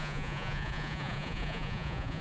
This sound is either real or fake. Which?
fake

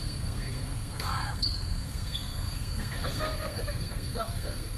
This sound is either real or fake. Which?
fake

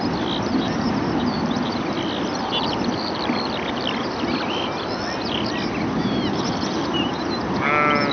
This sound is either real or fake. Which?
real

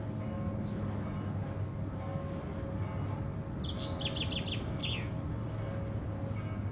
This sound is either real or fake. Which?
real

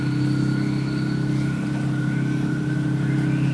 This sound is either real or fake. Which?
real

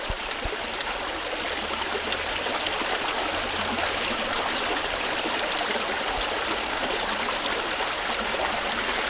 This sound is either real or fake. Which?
real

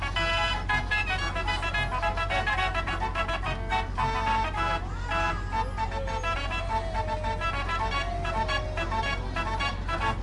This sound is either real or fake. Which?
real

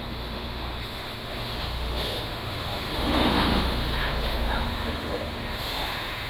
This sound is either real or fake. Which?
fake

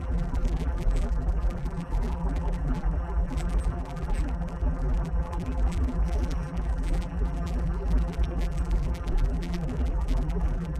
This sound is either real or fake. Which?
fake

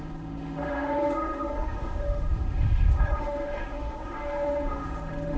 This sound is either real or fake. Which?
fake